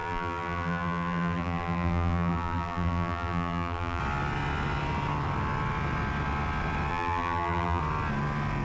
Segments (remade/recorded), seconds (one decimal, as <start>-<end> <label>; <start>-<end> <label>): 0.0-4.0 remade; 4.0-6.9 recorded; 6.9-7.8 remade; 7.8-8.6 recorded